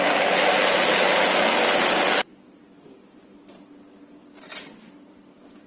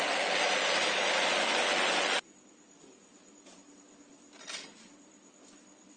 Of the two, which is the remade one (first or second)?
second